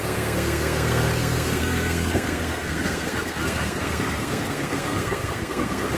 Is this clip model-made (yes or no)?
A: yes